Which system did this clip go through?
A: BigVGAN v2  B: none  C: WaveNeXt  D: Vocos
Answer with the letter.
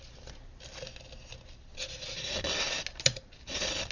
B